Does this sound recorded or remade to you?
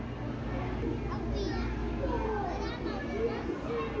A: recorded